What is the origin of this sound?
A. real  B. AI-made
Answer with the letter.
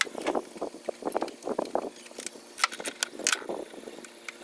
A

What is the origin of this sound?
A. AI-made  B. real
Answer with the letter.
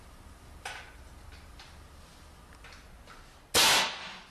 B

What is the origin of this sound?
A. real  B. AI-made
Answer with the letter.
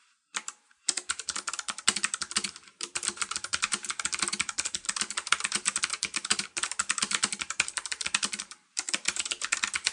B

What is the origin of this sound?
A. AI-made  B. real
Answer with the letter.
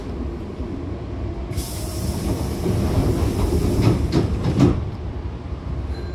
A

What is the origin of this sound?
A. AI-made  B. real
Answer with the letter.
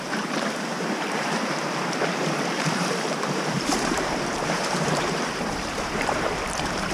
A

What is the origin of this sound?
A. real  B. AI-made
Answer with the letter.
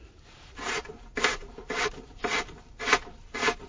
B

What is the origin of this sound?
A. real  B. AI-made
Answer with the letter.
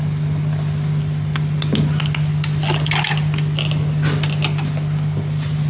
A